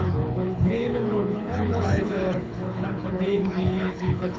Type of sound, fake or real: fake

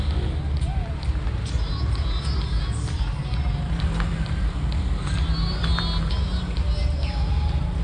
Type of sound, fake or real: real